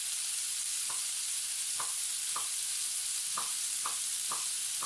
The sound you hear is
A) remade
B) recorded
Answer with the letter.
B